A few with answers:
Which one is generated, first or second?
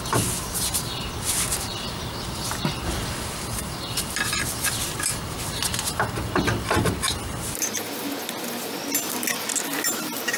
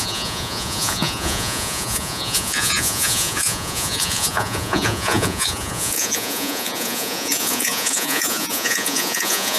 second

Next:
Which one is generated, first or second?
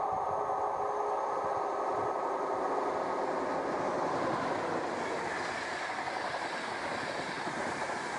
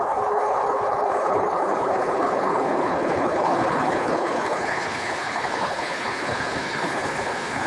second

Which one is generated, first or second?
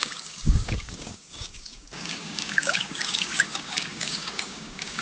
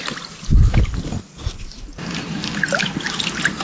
first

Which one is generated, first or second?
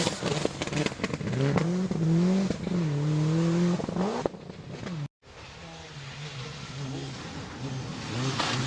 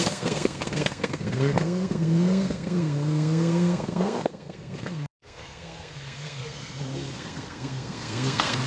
second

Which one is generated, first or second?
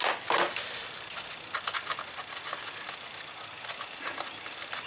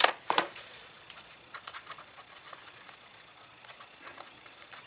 second